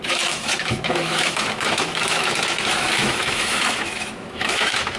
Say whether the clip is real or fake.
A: fake